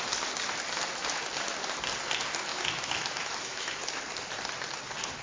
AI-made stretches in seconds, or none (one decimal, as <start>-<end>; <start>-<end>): 2.5-3.8